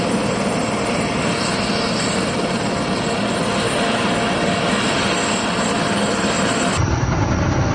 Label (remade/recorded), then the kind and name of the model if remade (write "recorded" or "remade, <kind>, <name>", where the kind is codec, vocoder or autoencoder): recorded